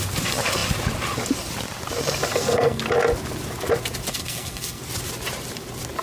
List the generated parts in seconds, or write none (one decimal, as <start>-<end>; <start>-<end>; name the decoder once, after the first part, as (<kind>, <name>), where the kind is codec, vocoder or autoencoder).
2.3-2.8 (codec, SNAC); 4.1-4.8

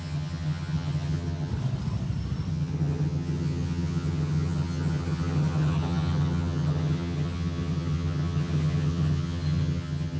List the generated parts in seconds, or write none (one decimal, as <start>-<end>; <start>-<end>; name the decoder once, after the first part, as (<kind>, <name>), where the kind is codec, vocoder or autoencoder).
0.0-1.5 (vocoder, HiFi-GAN); 2.5-10.2

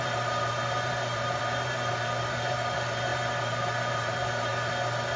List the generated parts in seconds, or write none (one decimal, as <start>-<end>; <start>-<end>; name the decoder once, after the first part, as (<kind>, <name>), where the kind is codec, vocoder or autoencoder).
0.0-4.5 (vocoder, BigVGAN v2)